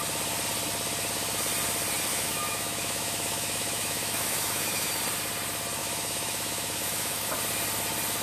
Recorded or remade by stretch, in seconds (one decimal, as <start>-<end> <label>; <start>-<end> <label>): 0.0-2.1 recorded; 2.1-4.9 remade; 4.9-5.8 recorded; 5.8-7.3 remade; 7.3-8.2 recorded